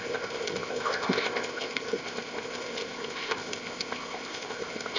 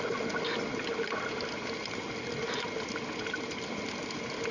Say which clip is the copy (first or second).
first